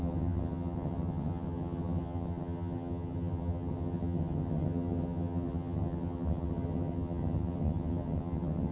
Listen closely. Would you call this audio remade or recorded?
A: remade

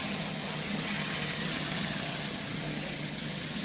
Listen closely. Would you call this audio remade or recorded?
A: remade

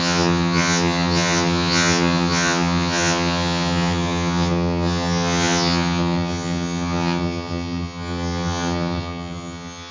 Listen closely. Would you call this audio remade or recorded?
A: remade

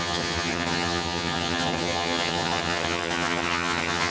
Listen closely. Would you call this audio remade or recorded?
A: remade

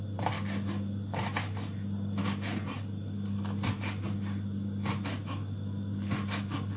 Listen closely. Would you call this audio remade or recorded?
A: recorded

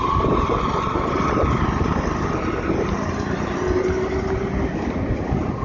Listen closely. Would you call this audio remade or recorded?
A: recorded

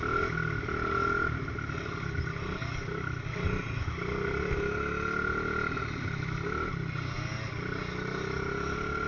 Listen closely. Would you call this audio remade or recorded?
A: recorded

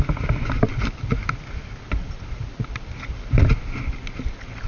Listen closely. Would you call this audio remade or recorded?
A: recorded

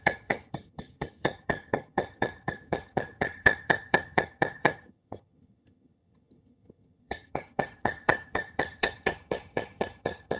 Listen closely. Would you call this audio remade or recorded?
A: remade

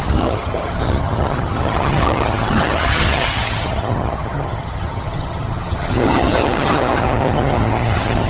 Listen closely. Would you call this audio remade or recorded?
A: remade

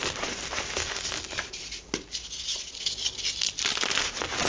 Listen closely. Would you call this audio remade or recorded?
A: recorded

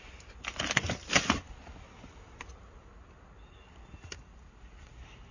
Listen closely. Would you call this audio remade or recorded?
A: recorded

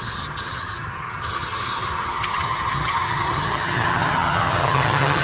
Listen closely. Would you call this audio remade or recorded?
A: remade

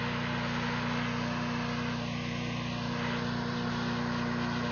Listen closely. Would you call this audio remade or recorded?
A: recorded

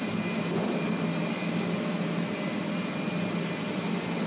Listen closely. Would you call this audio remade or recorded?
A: recorded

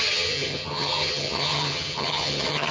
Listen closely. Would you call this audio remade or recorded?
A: remade